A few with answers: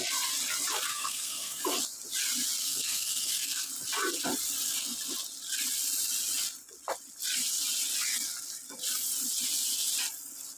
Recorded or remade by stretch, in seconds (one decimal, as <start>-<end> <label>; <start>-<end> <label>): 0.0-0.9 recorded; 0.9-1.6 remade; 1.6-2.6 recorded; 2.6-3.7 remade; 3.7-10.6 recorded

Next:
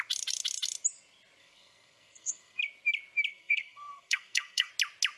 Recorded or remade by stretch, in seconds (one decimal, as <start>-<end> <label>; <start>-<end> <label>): 0.0-1.4 recorded; 1.4-2.6 remade; 2.6-3.3 recorded; 3.3-4.7 remade; 4.7-5.2 recorded

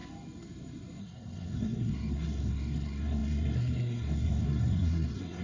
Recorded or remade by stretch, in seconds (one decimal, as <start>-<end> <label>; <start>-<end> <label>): 0.0-1.0 recorded; 1.0-5.4 remade